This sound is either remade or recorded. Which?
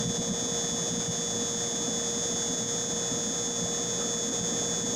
recorded